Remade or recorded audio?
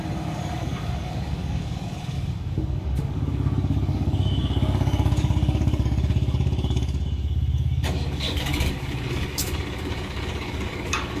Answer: remade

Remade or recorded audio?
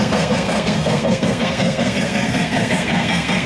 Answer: remade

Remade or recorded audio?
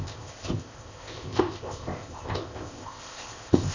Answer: remade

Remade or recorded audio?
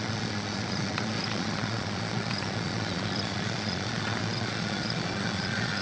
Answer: remade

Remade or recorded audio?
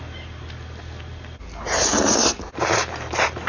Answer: recorded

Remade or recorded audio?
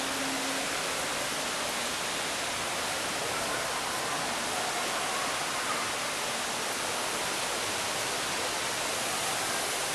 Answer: recorded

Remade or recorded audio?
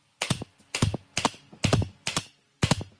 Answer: recorded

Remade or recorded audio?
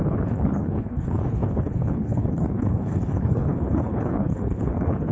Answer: remade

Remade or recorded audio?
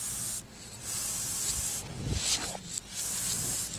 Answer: recorded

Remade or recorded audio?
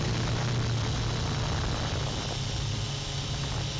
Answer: recorded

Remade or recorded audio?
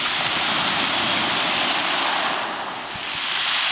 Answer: recorded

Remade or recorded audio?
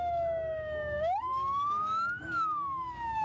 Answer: remade